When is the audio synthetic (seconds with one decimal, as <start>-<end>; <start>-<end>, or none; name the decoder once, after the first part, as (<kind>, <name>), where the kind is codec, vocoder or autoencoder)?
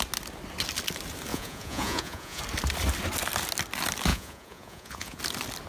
1.3-2.4 (vocoder, Vocos); 4.1-5.2